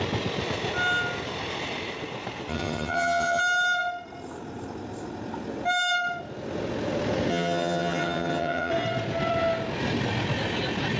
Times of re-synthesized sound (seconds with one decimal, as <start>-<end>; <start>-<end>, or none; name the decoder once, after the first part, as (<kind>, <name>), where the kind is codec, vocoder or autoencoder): 2.5-3.4 (vocoder, HiFi-GAN); 7.3-8.7